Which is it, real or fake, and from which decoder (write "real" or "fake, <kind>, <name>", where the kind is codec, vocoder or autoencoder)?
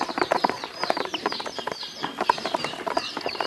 fake, vocoder, BigVGAN v2